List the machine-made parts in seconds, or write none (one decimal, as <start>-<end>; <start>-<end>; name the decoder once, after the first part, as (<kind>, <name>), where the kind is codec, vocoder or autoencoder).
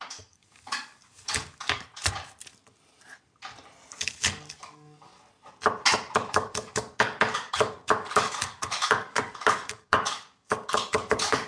0.0-1.9 (codec, DAC); 4.0-5.1; 6.3-11.5